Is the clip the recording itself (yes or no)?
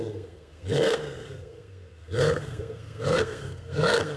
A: no